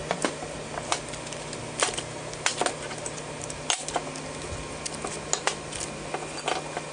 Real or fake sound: real